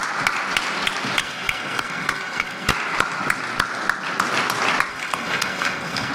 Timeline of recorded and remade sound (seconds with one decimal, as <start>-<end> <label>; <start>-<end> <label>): 0.0-1.2 recorded; 1.2-2.7 remade; 2.7-4.9 recorded; 4.9-6.1 remade